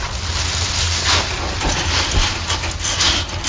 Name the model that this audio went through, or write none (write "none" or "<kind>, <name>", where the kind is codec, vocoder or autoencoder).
none